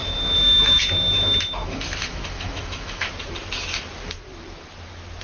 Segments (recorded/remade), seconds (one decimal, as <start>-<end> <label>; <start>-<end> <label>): 0.0-3.1 remade; 3.1-5.2 recorded